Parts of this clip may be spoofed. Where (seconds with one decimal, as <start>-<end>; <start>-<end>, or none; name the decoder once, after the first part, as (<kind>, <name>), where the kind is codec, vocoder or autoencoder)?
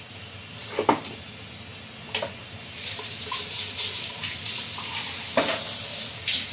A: none